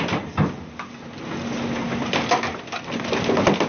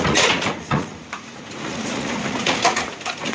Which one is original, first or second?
first